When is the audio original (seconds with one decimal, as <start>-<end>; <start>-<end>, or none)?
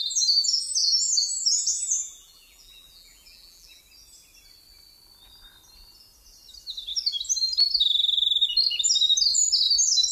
3.8-10.1